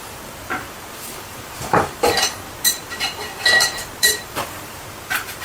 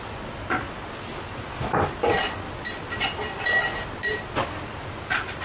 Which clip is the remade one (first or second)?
first